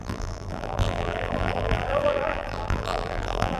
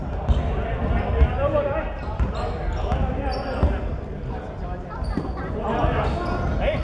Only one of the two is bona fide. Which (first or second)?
second